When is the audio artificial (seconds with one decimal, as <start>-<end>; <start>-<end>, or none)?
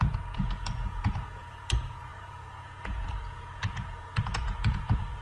0.0-5.2